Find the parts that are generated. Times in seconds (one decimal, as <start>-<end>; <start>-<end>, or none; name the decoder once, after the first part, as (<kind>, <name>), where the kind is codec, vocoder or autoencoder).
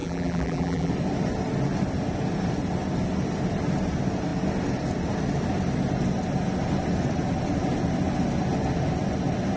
0.0-0.9 (vocoder, BigVGAN v2)